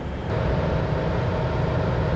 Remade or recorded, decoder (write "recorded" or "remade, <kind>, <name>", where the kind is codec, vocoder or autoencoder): recorded